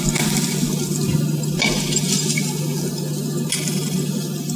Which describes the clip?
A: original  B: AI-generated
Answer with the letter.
A